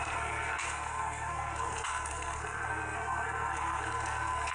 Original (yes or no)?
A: no